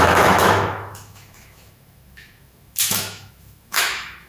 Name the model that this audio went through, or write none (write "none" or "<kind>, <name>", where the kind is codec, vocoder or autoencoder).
autoencoder, DAC-VAE